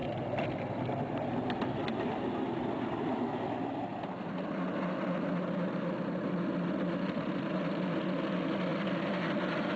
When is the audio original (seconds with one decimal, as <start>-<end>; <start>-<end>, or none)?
0.0-9.8